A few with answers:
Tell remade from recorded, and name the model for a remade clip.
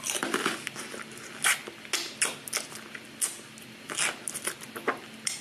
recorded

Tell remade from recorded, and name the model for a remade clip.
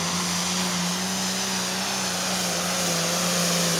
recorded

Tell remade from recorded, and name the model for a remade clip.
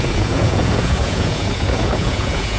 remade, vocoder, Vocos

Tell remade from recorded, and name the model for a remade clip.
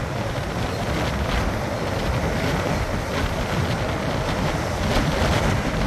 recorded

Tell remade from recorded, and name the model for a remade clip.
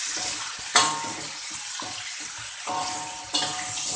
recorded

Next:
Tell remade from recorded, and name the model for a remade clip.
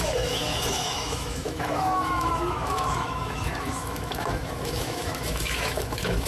remade, autoencoder, DAC-VAE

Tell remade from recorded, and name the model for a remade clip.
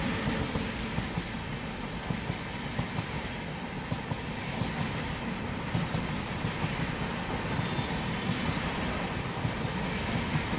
recorded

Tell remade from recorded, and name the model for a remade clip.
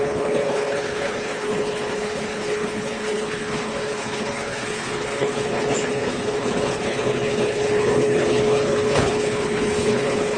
remade, codec, HILCodec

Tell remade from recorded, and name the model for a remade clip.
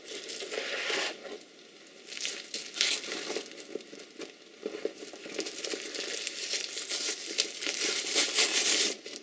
recorded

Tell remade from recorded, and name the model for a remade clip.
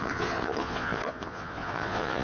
remade, vocoder, Vocos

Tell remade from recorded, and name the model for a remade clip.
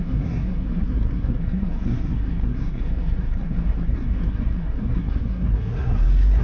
remade, codec, SNAC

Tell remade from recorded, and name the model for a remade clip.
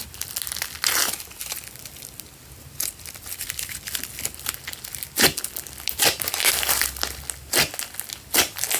recorded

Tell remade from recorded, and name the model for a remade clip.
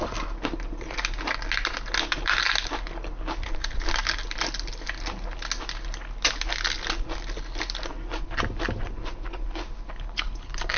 recorded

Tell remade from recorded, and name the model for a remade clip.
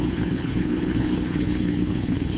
remade, codec, HILCodec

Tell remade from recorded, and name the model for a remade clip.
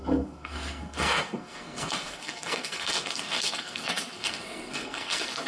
remade, codec, SNAC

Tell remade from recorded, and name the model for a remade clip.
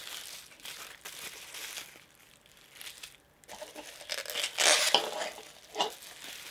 recorded